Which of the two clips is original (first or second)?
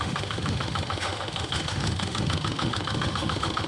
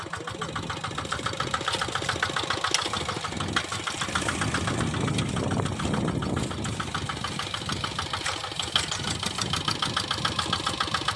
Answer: second